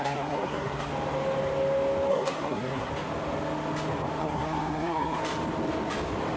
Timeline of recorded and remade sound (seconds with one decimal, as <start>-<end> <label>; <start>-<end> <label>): 0.0-0.9 remade; 0.9-2.1 recorded; 2.1-2.9 remade; 2.9-4.2 recorded; 4.2-5.2 remade; 5.2-6.4 recorded